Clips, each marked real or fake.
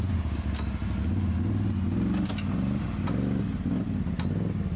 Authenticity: real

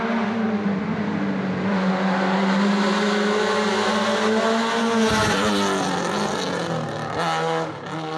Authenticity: real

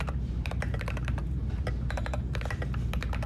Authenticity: fake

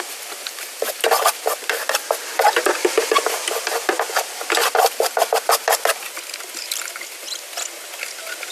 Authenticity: real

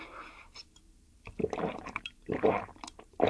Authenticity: fake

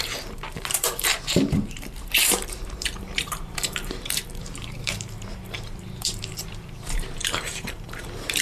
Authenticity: fake